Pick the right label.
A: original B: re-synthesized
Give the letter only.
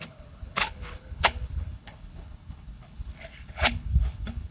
B